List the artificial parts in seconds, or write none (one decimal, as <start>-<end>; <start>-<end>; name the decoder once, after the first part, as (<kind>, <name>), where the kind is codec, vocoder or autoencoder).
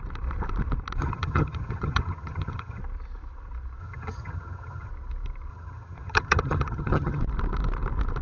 1.0-2.8 (vocoder, HiFi-GAN); 3.8-4.9; 5.5-7.2